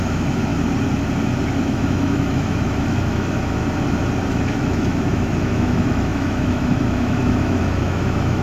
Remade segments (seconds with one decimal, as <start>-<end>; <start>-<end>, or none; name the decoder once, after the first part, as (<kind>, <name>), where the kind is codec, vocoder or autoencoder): 0.0-0.5 (autoencoder, DAC-VAE); 1.7-3.6; 4.3-8.4